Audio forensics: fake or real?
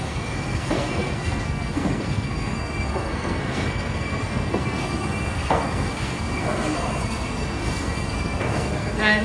fake